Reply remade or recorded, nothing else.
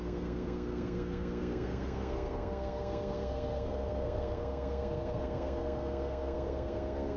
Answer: remade